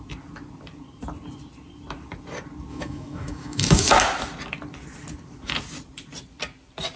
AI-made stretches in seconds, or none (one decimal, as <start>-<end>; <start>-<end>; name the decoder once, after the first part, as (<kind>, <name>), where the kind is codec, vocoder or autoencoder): 2.7-3.9 (autoencoder, DAC-VAE)